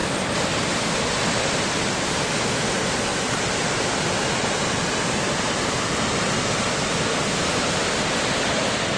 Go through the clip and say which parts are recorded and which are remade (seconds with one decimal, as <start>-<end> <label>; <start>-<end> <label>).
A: 0.0-1.5 remade; 1.5-9.0 recorded